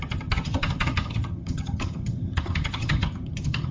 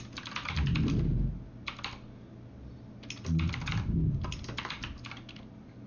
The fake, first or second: first